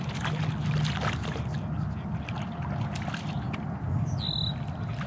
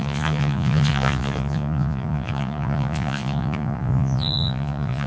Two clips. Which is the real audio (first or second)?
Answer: first